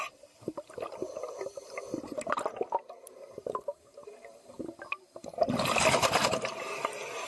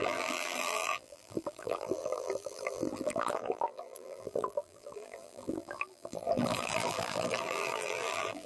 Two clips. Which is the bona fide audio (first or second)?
first